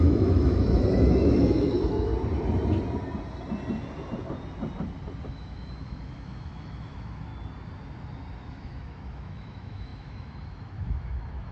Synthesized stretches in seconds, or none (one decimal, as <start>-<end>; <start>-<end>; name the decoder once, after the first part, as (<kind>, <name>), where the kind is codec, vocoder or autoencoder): 0.0-2.1 (autoencoder, DAC-VAE); 5.3-7.3; 8.5-11.5